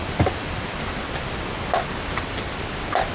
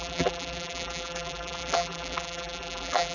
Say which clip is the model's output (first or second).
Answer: second